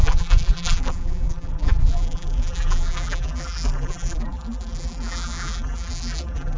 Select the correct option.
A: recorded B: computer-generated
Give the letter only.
B